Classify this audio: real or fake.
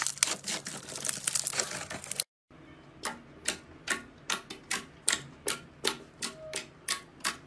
real